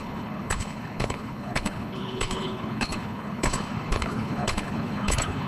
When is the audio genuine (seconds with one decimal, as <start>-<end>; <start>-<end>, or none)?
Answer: none